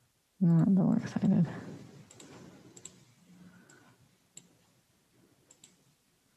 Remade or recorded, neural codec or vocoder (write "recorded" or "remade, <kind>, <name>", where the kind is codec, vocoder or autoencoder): recorded